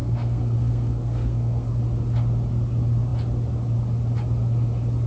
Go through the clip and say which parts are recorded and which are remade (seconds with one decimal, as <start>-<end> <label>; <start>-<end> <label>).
0.0-1.8 remade; 1.8-5.1 recorded